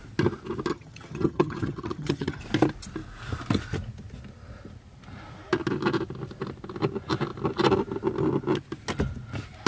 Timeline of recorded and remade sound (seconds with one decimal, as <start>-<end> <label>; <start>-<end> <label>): 0.0-0.7 recorded; 0.7-2.4 remade; 2.4-9.7 recorded